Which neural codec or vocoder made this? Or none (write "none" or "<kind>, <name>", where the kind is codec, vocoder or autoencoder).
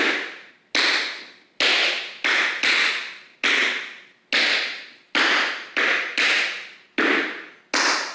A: none